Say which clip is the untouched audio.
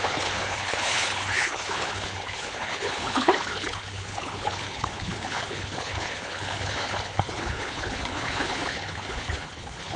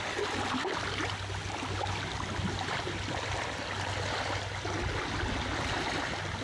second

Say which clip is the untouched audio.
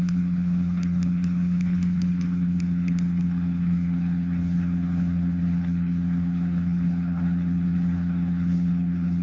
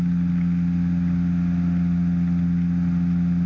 second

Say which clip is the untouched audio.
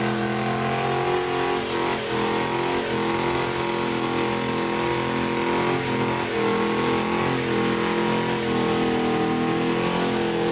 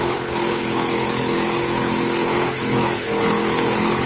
first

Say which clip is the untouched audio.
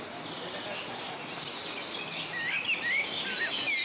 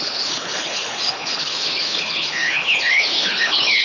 first